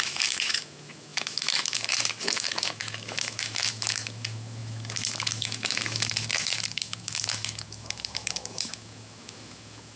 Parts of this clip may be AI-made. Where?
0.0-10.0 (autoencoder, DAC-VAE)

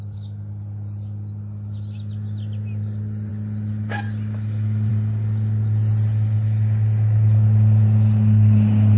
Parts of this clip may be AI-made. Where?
none

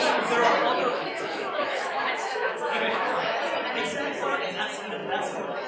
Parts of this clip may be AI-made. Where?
0.6-3.4 (autoencoder, DAC-VAE)